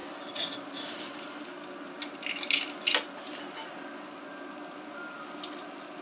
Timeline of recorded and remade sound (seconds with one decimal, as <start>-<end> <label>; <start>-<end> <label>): 0.0-6.0 recorded